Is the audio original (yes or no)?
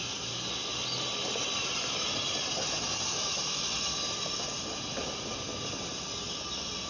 yes